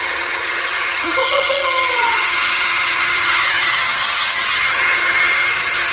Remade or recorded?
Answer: remade